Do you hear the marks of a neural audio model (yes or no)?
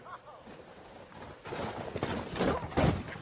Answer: no